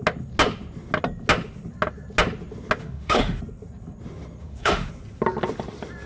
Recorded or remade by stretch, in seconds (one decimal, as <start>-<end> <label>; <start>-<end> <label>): 0.0-2.8 recorded; 2.8-3.4 remade; 3.4-4.4 recorded; 4.4-4.9 remade; 4.9-6.1 recorded

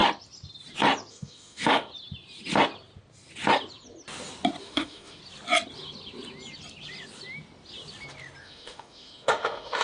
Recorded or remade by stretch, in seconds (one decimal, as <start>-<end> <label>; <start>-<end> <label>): 0.0-1.1 recorded; 1.1-1.9 remade; 1.9-4.6 recorded; 4.6-5.2 remade; 5.2-8.4 recorded; 8.4-9.8 remade